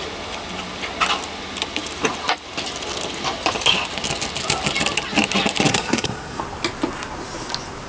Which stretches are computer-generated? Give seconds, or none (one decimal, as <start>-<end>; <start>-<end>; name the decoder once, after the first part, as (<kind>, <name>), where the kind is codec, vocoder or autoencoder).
5.7-6.4 (codec, SNAC)